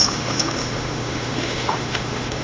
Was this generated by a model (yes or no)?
yes